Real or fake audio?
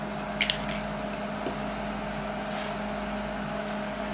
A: real